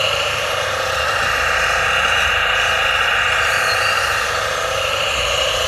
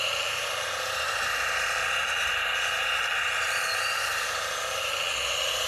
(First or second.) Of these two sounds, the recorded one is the second